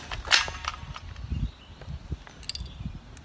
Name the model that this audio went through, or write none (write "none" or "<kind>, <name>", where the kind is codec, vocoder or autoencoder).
none